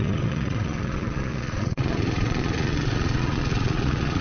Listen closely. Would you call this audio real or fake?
fake